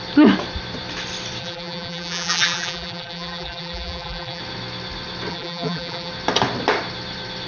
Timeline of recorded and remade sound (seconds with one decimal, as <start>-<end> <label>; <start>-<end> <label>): 0.0-1.4 recorded; 1.4-4.4 remade; 4.4-5.3 recorded; 5.3-6.1 remade; 6.1-7.5 recorded